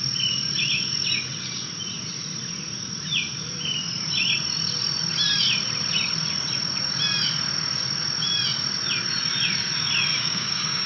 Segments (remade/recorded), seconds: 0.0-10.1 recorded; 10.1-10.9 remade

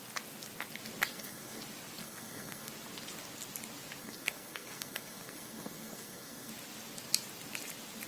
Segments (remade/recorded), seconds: 0.0-1.1 recorded; 1.1-1.6 remade; 1.6-2.0 recorded; 2.0-2.7 remade; 2.7-4.0 recorded; 4.0-6.5 remade; 6.5-8.1 recorded

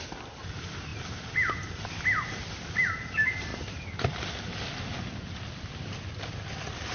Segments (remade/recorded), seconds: 0.0-6.9 recorded